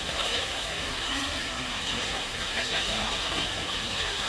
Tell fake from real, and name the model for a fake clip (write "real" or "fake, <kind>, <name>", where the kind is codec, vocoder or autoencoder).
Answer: fake, codec, SNAC